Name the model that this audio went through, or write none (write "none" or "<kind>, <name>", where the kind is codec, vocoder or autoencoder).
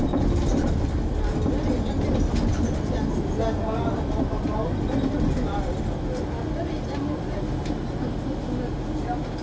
none